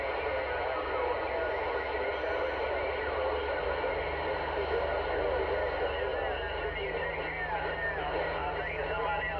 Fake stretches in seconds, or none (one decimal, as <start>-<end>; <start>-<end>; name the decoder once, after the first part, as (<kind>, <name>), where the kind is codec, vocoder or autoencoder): none